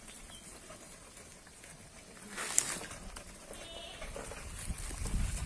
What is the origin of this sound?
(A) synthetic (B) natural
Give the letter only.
B